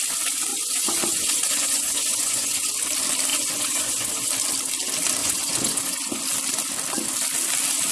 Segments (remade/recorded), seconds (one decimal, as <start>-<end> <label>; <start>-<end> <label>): 0.0-0.5 recorded; 0.5-2.7 remade; 2.7-3.3 recorded; 3.3-4.3 remade; 4.3-5.2 recorded; 5.2-6.2 remade; 6.2-7.9 recorded